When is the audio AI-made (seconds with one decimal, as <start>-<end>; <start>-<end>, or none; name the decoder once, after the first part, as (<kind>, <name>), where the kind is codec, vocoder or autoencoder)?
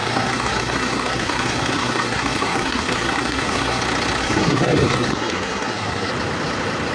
0.0-3.8 (codec, SNAC); 4.2-6.1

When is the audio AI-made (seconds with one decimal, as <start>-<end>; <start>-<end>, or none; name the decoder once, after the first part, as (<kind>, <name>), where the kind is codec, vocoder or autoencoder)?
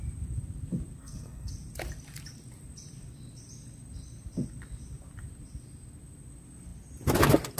1.0-1.5 (codec, SNAC)